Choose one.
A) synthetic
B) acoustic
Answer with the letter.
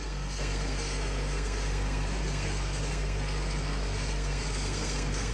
A